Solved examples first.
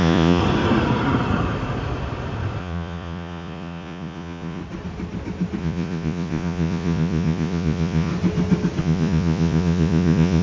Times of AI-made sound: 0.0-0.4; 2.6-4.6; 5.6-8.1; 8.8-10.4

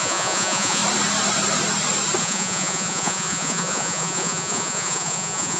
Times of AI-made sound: 0.0-0.8; 2.2-5.6

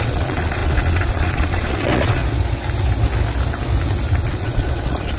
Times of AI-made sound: 0.0-2.2; 4.3-5.2

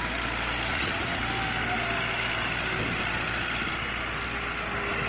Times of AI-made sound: 0.7-1.2